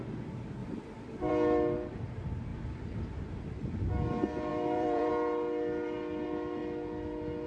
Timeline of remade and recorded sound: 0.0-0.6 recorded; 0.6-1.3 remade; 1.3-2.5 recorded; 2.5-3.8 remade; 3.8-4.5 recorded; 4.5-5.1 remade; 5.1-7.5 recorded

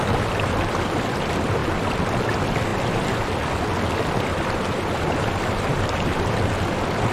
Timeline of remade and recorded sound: 0.0-1.6 recorded; 1.6-2.2 remade; 2.2-7.1 recorded

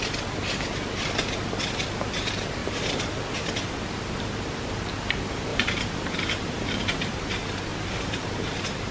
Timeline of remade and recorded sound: 0.0-2.6 recorded; 2.6-3.5 remade; 3.5-5.5 recorded; 5.5-7.2 remade; 7.2-7.7 recorded; 7.7-8.9 remade

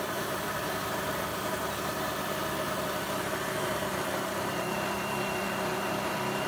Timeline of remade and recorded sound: 0.0-1.3 remade; 1.3-3.2 recorded; 3.2-6.5 remade

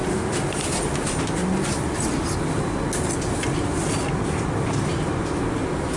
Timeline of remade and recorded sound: 0.0-0.6 remade; 0.6-6.0 recorded

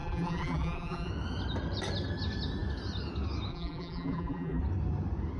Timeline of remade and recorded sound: 0.0-1.1 remade; 1.1-3.5 recorded; 3.5-4.6 remade; 4.6-5.4 recorded